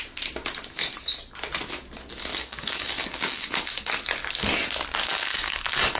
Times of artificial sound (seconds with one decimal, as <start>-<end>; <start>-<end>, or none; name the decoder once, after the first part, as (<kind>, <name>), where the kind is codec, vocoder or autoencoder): 2.3-3.9 (codec, DAC); 5.0-6.0